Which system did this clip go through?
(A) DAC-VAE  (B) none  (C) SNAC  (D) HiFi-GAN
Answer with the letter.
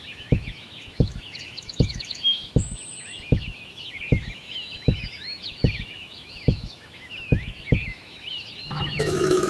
A